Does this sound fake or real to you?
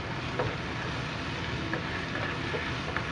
real